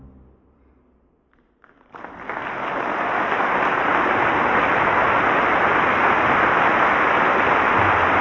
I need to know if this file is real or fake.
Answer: real